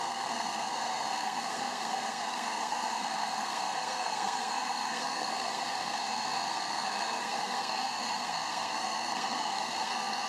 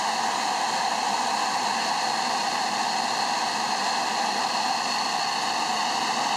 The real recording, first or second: second